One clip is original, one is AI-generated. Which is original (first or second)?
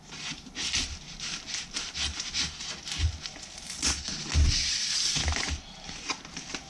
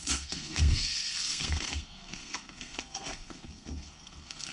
first